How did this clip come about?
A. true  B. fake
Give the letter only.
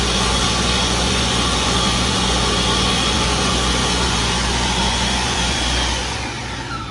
B